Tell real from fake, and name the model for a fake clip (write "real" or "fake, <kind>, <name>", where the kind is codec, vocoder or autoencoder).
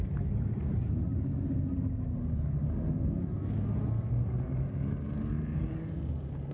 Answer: real